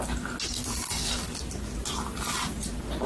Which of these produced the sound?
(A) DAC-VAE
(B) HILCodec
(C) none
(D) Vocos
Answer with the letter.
C